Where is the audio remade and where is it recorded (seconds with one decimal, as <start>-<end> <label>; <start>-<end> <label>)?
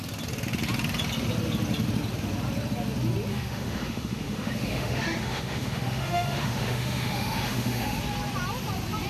0.0-3.3 recorded; 3.3-8.0 remade; 8.0-9.1 recorded